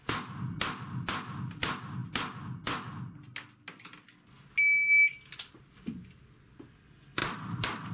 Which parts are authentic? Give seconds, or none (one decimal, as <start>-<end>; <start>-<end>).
0.0-7.9